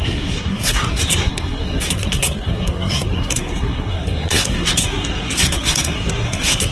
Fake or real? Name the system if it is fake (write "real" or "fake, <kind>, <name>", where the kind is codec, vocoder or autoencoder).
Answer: fake, codec, SNAC